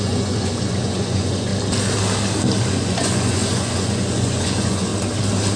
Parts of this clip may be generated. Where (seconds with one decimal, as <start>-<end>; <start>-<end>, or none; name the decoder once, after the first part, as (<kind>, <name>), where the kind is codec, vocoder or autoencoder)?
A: 0.0-1.5 (vocoder, Vocos); 2.6-4.9